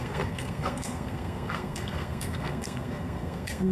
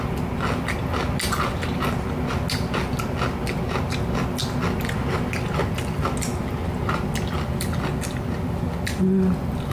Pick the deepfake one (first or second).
first